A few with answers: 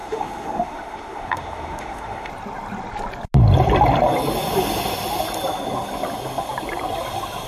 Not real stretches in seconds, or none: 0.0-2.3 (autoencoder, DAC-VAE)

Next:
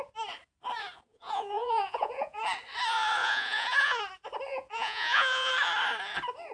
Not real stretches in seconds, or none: 1.1-2.4 (vocoder, Vocos); 3.2-4.0; 4.5-5.5

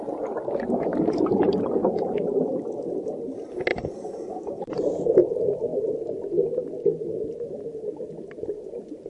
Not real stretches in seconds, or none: 0.9-2.4 (vocoder, BigVGAN v2); 3.7-4.9

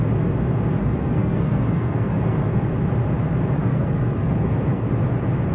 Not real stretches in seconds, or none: 0.8-2.7 (codec, SNAC); 3.6-4.9